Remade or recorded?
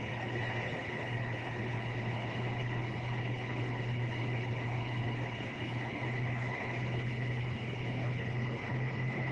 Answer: remade